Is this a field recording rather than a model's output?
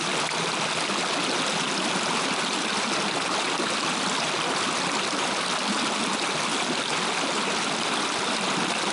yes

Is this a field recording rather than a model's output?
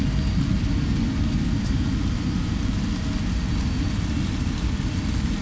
yes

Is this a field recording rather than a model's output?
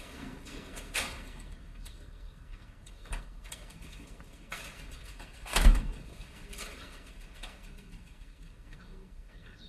no